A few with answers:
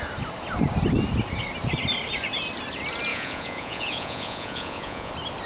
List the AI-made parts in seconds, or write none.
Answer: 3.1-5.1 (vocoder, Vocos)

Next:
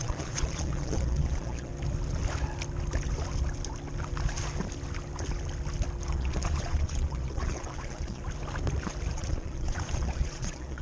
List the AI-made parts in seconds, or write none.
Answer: 0.0-1.7 (vocoder, Vocos); 6.1-8.2; 9.1-10.8

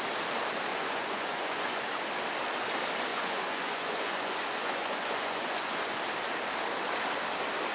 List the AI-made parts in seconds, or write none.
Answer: 0.7-1.8 (vocoder, Vocos); 3.1-6.0

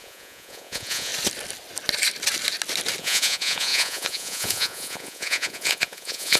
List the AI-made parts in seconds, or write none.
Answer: 0.0-1.1 (vocoder, Vocos); 3.0-6.4

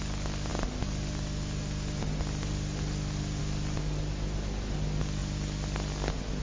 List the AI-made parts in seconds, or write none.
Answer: none

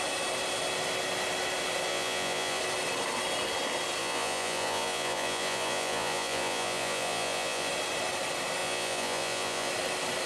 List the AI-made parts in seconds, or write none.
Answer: 1.9-2.6 (vocoder, Vocos); 4.0-7.7; 8.6-9.7